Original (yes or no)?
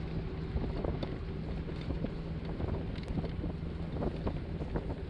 yes